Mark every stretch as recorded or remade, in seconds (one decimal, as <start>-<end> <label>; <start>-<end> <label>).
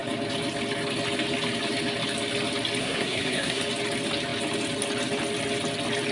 0.0-2.8 recorded; 2.8-3.6 remade; 3.6-6.1 recorded